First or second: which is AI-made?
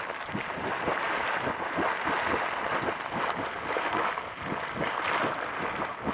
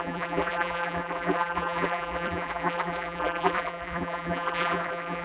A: second